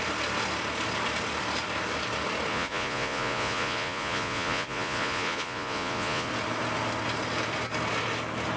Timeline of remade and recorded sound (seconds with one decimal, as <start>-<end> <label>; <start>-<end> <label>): 0.0-2.5 recorded; 2.5-6.3 remade; 6.3-8.6 recorded